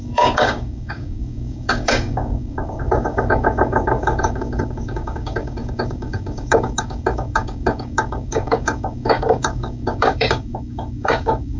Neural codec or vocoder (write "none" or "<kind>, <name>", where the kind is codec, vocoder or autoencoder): codec, DAC